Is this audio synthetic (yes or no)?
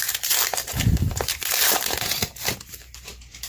yes